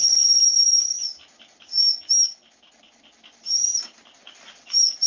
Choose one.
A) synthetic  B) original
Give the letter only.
B